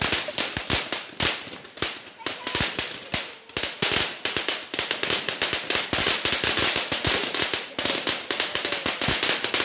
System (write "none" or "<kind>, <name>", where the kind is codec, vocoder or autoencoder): none